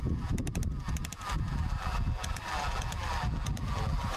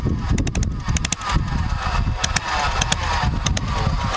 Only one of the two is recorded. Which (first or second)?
second